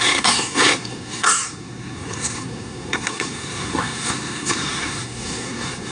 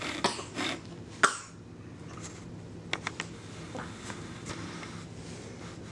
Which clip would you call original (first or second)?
second